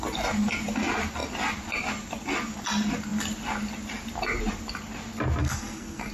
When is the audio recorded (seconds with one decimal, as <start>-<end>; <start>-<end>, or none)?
0.0-5.4